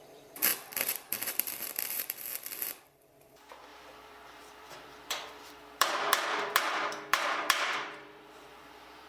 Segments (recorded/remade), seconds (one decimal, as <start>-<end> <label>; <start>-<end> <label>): 0.0-9.1 remade